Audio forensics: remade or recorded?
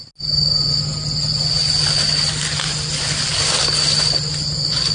recorded